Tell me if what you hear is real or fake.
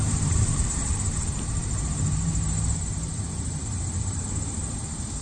fake